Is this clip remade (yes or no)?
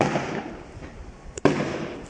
yes